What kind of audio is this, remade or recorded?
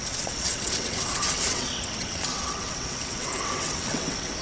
remade